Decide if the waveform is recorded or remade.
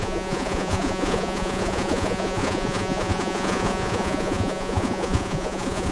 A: remade